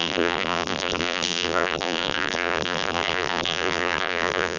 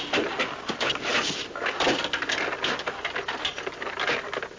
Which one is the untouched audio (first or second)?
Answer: second